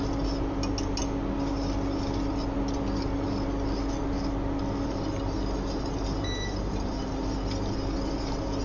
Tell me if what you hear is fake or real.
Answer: real